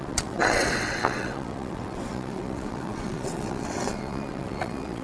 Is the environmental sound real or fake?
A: fake